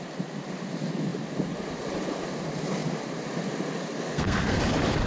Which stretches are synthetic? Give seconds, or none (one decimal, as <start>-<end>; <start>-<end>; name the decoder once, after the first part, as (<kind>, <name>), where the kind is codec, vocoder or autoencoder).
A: 4.1-4.6 (codec, SNAC)